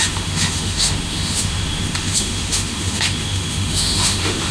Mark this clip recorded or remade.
remade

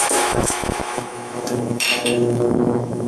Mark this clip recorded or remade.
remade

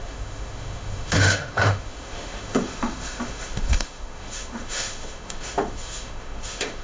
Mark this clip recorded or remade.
remade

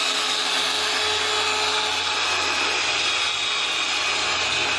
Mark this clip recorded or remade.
recorded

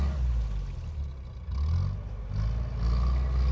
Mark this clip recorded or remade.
recorded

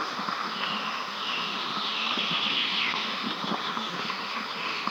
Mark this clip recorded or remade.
remade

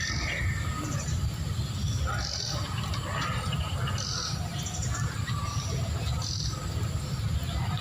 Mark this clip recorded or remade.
recorded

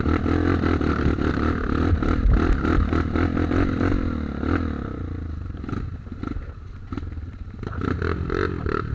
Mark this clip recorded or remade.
recorded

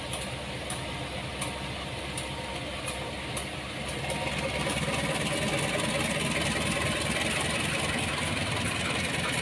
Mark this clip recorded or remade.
recorded